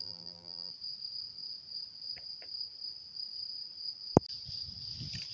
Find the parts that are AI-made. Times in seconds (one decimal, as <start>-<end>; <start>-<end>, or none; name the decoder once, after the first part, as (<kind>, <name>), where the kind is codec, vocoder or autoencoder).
0.0-0.7 (vocoder, BigVGAN v2)